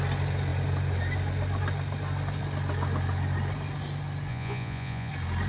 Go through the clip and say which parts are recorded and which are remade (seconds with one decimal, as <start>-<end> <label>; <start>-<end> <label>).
0.0-4.3 recorded; 4.3-5.1 remade; 5.1-5.5 recorded